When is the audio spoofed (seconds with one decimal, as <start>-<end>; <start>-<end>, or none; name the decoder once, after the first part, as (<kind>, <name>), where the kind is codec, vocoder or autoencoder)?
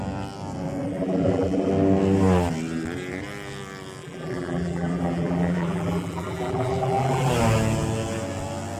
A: 0.8-1.7 (vocoder, BigVGAN v2); 4.0-7.3